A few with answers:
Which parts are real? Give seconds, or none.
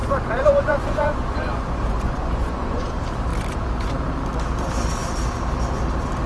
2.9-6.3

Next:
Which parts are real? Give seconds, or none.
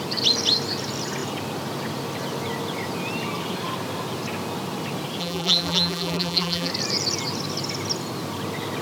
0.0-5.2; 6.7-8.8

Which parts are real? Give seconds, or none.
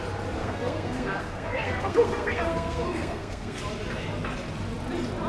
0.0-0.4; 3.6-5.3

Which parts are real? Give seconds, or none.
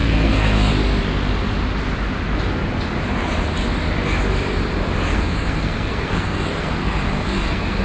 0.7-5.1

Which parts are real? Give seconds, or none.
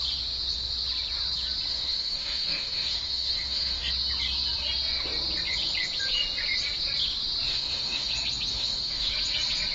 0.0-1.7; 3.9-7.5; 8.1-8.5; 9.1-9.7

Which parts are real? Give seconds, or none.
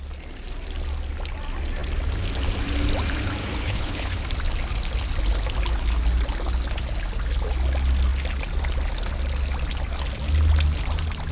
0.0-3.6; 4.2-11.3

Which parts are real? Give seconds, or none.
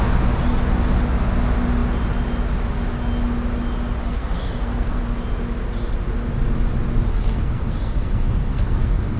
0.0-4.0; 5.0-7.1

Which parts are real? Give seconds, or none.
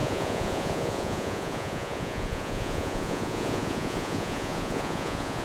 none